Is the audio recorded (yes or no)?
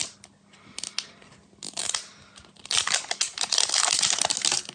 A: yes